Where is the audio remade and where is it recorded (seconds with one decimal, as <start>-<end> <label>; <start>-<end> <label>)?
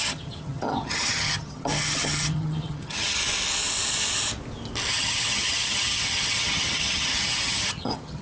0.0-3.2 remade; 3.2-4.9 recorded; 4.9-8.2 remade